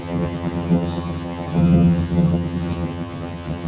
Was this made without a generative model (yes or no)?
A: no